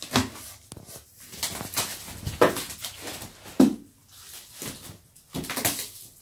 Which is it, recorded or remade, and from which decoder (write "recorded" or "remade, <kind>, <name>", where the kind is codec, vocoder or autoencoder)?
recorded